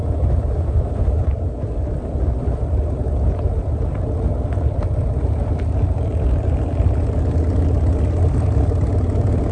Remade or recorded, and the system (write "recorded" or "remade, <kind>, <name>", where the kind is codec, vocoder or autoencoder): recorded